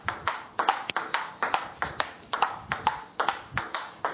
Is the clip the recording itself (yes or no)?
yes